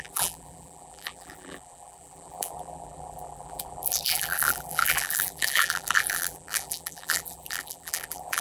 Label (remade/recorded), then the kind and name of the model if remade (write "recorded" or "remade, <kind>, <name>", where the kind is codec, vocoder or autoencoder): remade, vocoder, BigVGAN v2